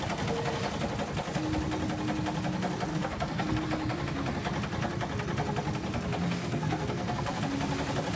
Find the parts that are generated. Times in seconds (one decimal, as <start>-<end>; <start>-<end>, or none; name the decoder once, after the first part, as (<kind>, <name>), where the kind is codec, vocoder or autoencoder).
2.9-3.6 (codec, SNAC); 6.4-7.4

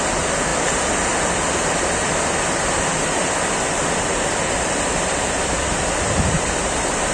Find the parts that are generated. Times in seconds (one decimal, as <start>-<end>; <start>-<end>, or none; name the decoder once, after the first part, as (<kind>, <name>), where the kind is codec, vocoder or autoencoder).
none

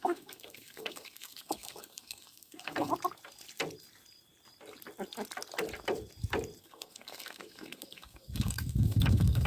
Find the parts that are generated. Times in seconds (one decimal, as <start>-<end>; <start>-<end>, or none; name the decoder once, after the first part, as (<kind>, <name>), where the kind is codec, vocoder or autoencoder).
0.0-2.9 (codec, SNAC); 6.6-9.5

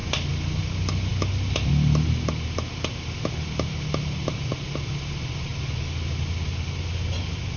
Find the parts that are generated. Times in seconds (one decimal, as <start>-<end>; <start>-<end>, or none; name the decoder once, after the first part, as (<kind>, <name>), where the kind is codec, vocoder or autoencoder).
none

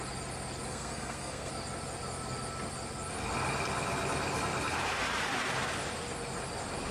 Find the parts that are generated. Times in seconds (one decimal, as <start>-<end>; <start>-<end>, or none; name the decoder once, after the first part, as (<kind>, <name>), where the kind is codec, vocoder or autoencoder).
0.7-1.5 (codec, SNAC)

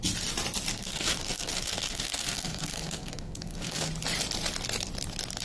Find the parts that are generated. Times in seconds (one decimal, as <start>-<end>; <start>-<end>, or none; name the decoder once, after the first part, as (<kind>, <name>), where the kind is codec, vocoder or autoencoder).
0.7-3.9 (codec, SNAC)

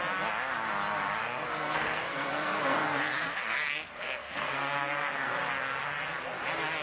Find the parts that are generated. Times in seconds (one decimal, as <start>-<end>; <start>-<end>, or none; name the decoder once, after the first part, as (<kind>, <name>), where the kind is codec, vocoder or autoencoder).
1.2-5.3 (codec, SNAC)

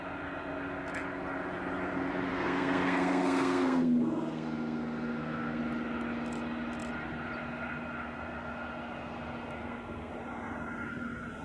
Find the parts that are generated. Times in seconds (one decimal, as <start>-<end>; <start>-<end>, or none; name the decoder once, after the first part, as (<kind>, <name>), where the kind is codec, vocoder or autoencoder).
2.3-5.6 (codec, SNAC); 9.6-10.1